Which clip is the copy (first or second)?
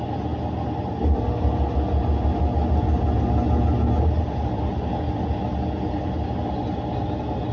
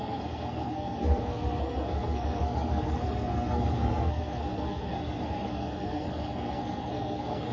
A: second